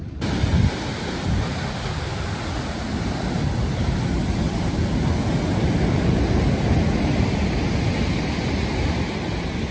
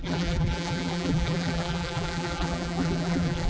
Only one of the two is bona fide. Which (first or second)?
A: first